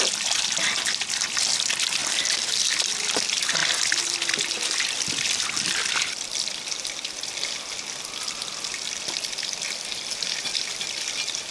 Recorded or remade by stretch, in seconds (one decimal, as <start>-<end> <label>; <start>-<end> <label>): 0.0-2.0 recorded; 2.0-2.9 remade; 2.9-11.5 recorded